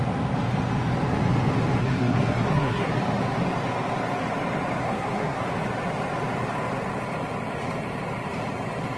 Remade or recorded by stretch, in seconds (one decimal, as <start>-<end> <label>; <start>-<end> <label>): 0.0-1.8 recorded; 1.8-2.9 remade; 2.9-4.8 recorded; 4.8-5.5 remade; 5.5-9.0 recorded